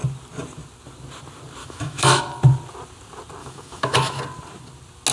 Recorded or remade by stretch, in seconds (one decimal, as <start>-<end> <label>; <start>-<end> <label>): 0.0-1.6 recorded; 1.6-2.2 remade; 2.2-3.4 recorded; 3.4-4.2 remade; 4.2-5.1 recorded